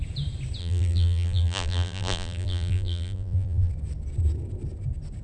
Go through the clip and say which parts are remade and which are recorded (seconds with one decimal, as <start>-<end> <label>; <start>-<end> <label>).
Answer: 0.0-0.6 recorded; 0.6-3.7 remade; 3.7-5.2 recorded